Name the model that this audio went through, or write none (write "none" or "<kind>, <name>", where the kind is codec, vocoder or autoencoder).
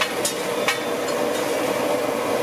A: none